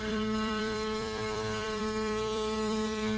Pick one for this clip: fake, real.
fake